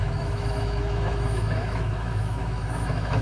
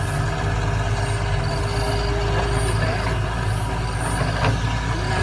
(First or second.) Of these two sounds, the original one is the second